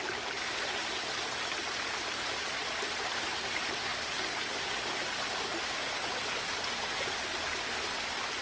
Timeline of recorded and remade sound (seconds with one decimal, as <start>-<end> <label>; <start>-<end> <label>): 0.0-8.4 recorded